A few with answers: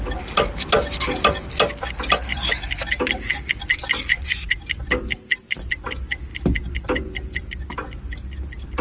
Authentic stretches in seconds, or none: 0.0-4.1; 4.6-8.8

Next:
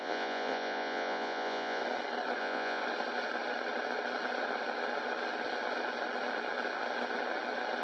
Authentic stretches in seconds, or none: 1.8-2.4; 2.8-7.8